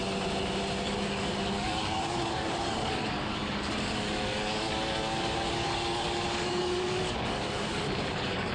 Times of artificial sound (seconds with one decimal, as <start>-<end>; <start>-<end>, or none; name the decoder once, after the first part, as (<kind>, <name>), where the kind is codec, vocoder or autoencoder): 0.8-8.5 (codec, DAC)